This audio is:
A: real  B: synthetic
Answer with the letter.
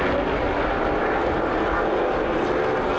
A